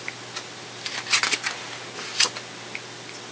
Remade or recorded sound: recorded